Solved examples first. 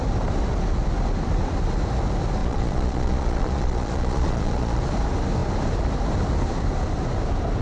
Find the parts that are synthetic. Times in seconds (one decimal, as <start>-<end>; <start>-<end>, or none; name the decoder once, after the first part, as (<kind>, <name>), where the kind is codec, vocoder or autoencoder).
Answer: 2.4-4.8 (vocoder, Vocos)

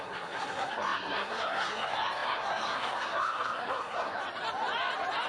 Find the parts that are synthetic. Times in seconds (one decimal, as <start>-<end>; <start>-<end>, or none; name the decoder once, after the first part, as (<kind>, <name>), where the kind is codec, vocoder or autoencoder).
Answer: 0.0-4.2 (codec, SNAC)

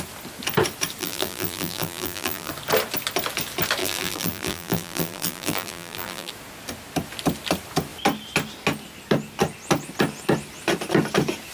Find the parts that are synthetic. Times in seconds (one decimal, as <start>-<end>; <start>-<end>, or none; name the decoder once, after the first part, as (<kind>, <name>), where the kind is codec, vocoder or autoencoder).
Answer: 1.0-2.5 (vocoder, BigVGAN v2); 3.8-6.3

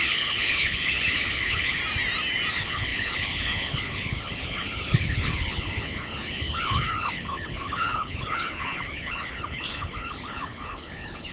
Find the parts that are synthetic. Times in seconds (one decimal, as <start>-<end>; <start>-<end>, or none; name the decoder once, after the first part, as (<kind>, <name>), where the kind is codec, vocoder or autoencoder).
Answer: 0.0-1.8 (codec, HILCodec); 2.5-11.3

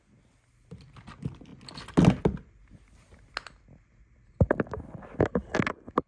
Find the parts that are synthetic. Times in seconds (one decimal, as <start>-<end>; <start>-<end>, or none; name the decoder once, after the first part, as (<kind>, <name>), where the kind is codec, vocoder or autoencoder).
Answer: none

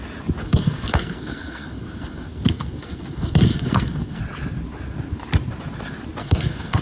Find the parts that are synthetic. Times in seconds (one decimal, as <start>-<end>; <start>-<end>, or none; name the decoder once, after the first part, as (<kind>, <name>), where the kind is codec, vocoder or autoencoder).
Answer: 0.4-4.2 (codec, SNAC); 6.2-6.8

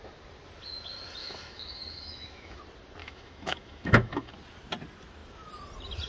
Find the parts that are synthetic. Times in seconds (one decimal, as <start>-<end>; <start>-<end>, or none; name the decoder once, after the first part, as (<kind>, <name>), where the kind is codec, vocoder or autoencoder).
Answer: 1.2-2.5 (autoencoder, DAC-VAE); 3.0-4.3